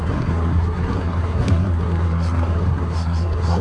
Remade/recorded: remade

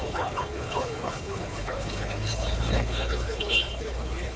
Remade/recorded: remade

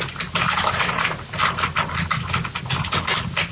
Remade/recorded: recorded